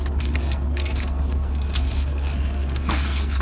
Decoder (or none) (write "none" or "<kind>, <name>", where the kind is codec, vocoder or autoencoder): codec, SNAC